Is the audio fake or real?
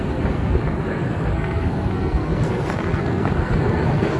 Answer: fake